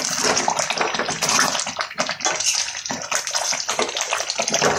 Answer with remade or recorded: recorded